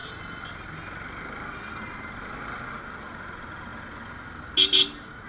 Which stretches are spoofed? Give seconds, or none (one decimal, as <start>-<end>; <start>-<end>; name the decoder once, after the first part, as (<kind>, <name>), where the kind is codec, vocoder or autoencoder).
none